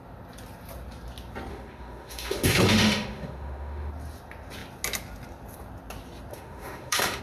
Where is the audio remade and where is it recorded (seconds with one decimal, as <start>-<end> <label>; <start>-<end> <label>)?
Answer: 0.0-1.5 recorded; 1.5-3.9 remade; 3.9-6.3 recorded; 6.3-7.2 remade